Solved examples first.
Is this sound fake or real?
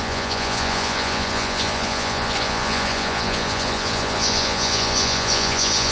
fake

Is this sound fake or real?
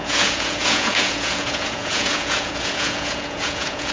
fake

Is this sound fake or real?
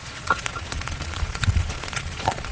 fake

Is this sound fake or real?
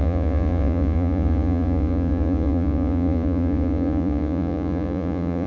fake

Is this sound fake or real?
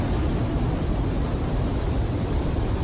real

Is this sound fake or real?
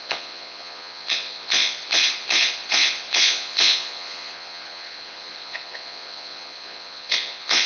fake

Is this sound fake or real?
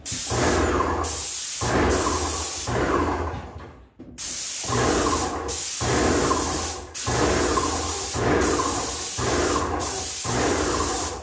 real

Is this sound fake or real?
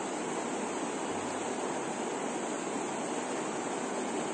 real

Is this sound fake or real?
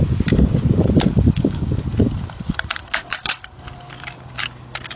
real